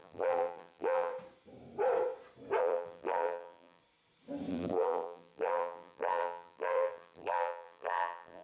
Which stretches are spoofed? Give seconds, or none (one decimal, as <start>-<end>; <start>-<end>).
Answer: 0.0-1.1; 2.6-3.8; 4.5-8.4